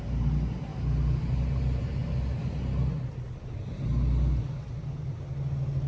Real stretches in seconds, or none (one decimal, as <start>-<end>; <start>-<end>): 0.0-5.9